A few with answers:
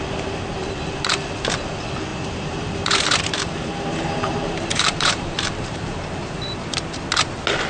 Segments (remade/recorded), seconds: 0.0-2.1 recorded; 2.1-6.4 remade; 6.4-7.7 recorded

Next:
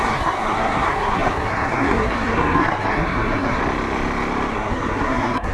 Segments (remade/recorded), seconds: 0.0-3.6 remade; 3.6-4.5 recorded; 4.5-5.5 remade